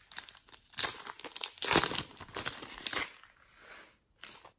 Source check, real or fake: real